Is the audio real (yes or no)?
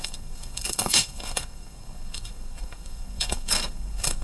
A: no